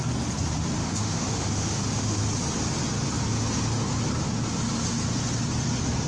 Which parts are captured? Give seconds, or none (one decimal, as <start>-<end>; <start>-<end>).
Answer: 0.0-0.8; 2.2-6.1

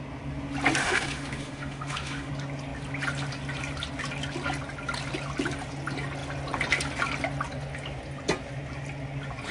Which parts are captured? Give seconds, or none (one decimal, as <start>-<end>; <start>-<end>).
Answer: 0.0-0.8; 2.3-9.5

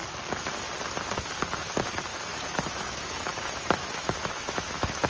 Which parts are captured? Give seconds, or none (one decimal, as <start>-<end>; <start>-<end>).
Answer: 0.0-2.1